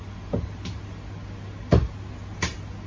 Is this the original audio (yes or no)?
yes